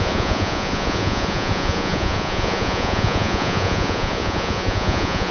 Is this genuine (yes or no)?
no